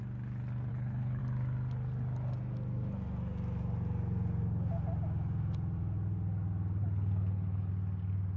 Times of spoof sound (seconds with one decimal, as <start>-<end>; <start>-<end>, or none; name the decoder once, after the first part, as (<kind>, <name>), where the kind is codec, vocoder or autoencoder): 0.7-1.2 (codec, HILCodec); 6.8-7.7